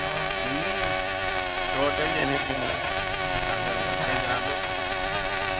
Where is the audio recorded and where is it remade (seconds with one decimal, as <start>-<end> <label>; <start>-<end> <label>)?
0.0-2.2 recorded; 2.2-2.9 remade; 2.9-5.6 recorded